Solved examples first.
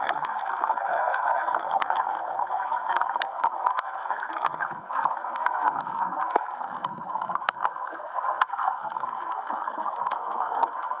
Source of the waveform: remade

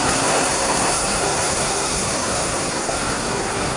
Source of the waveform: remade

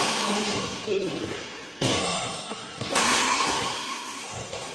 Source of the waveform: remade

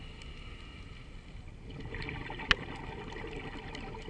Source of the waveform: recorded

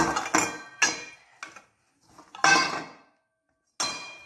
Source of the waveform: recorded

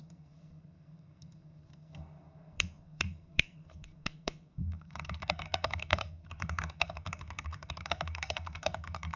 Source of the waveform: remade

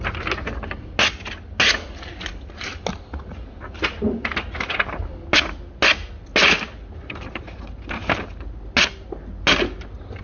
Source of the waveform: recorded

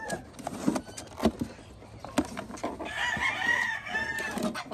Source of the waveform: recorded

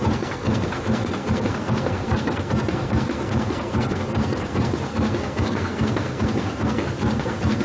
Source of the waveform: remade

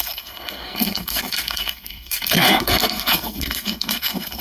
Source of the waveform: remade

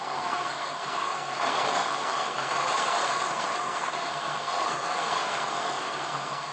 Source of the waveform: remade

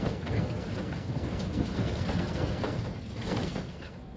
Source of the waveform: remade